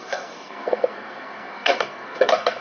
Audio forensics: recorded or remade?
remade